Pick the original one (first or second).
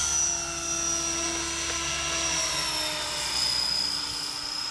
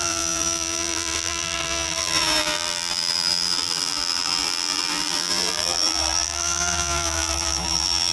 first